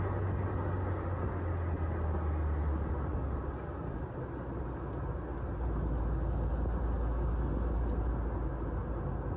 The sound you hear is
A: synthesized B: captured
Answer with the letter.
B